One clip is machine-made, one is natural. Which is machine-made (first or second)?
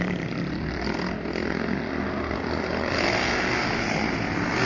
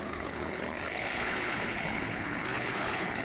second